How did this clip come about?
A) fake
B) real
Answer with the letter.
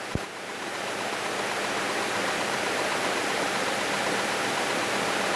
B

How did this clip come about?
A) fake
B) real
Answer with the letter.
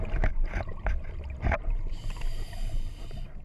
B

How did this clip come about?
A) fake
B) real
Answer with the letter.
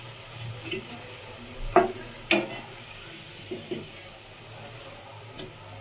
B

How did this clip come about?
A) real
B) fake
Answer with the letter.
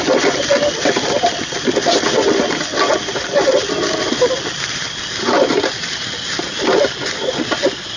A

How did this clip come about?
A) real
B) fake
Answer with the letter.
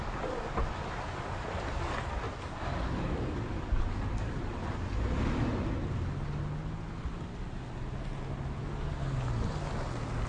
A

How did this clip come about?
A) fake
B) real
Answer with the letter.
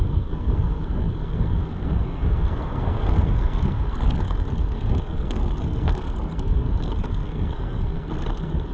A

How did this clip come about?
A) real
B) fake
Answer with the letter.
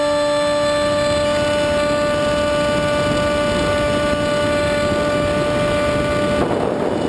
A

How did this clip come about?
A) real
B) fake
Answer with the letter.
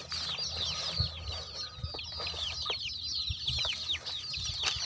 A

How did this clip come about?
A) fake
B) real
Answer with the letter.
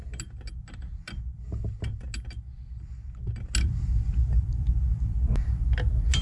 B